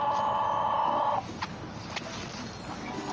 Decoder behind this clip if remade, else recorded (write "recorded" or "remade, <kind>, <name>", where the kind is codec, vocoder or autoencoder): recorded